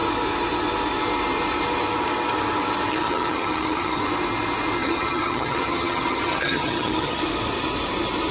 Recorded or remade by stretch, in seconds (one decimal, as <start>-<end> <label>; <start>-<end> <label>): 0.0-2.9 recorded; 2.9-4.0 remade; 4.0-4.8 recorded; 4.8-7.2 remade; 7.2-8.3 recorded